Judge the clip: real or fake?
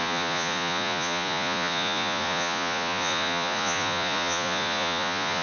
fake